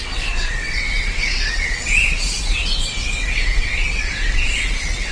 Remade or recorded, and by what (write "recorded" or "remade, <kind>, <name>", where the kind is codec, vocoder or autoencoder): remade, vocoder, WaveNeXt